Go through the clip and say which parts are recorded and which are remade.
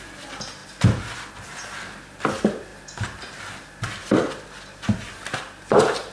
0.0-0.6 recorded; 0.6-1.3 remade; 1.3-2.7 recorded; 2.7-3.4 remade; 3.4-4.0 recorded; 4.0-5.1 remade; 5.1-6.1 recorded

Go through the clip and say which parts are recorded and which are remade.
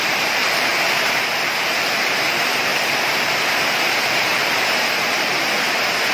0.0-0.7 remade; 0.7-1.7 recorded; 1.7-2.7 remade; 2.7-3.4 recorded; 3.4-6.1 remade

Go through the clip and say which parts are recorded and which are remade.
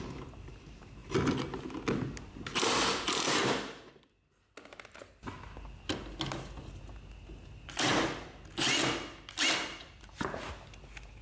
0.0-11.2 recorded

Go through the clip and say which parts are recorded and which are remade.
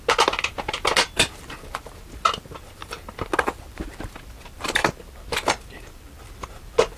0.0-2.8 recorded; 2.8-3.3 remade; 3.3-7.0 recorded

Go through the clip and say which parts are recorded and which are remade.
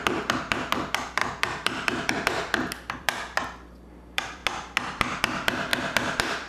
0.0-4.4 remade; 4.4-5.2 recorded; 5.2-6.5 remade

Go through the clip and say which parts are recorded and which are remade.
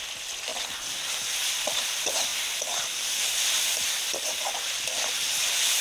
0.0-0.5 remade; 0.5-1.5 recorded; 1.5-5.8 remade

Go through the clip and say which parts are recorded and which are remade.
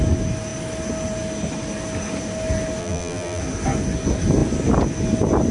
0.0-2.8 recorded; 2.8-3.4 remade; 3.4-5.5 recorded